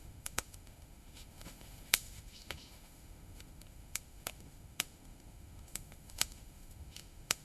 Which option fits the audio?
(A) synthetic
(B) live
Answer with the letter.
A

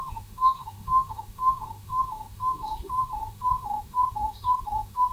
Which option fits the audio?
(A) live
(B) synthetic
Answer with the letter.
B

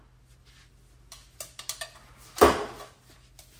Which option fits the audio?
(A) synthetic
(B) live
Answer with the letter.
B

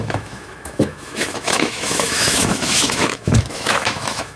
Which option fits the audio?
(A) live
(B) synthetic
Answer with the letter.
B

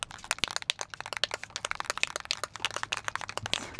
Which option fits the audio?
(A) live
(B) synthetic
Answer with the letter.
A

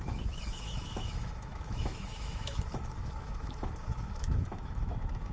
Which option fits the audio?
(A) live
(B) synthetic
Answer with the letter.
B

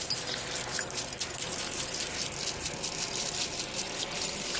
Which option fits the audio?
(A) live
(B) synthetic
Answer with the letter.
A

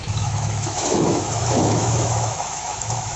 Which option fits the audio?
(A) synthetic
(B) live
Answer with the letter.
A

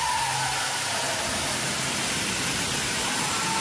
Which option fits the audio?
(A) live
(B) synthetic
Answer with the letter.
A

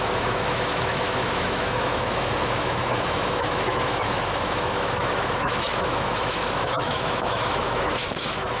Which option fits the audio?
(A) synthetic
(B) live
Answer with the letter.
A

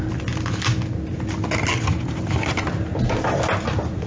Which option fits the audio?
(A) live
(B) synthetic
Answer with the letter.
A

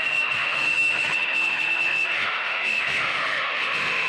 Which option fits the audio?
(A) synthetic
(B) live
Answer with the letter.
A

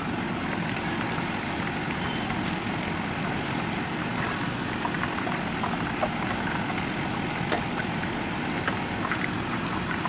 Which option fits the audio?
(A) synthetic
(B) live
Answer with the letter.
B